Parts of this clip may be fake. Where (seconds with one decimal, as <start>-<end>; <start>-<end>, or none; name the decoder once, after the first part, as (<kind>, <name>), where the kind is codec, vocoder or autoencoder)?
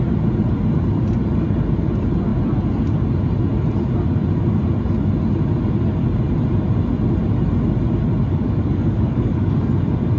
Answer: 8.3-9.5 (codec, DAC)